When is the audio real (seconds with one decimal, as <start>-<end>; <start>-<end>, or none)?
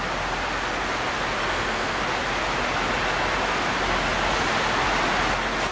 0.0-1.4; 2.0-5.7